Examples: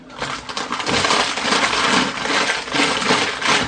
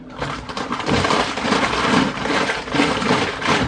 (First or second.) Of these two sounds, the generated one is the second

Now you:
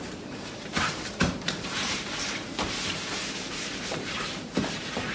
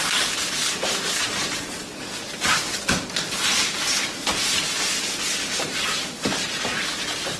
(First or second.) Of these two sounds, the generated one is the first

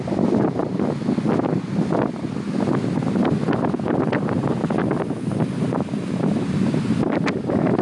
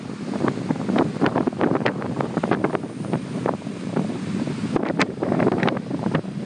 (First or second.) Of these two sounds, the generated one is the second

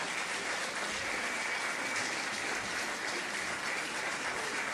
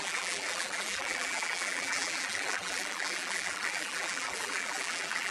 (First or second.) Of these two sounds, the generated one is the second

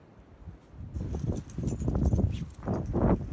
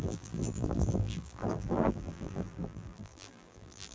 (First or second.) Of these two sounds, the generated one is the second